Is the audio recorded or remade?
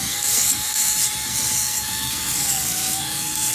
remade